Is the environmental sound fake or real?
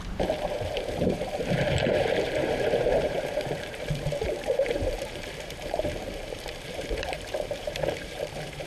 fake